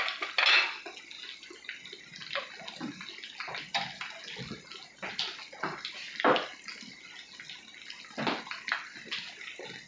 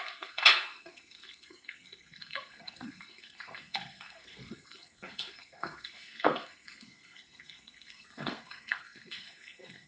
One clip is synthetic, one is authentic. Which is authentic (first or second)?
first